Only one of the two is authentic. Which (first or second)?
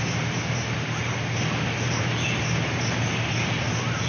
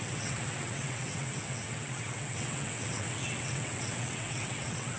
first